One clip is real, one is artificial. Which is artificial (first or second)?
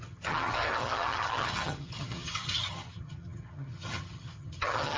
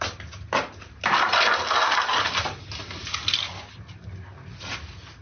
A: first